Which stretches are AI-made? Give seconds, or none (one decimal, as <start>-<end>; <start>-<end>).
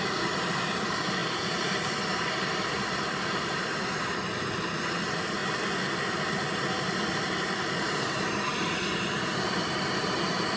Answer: 0.0-5.4; 6.3-10.6